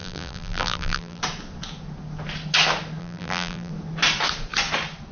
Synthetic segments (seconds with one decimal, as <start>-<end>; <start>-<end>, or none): 0.0-1.2; 3.0-3.7